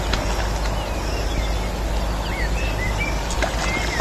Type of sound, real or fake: real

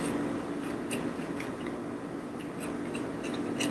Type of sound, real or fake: real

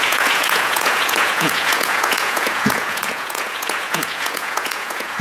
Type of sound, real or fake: fake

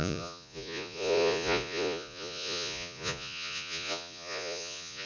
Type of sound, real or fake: fake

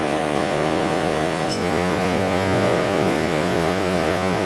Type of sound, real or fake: fake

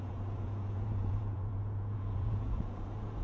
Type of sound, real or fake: fake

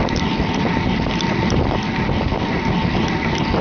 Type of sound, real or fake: real